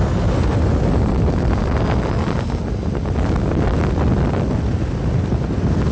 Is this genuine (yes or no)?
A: yes